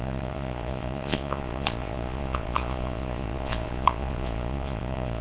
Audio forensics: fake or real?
fake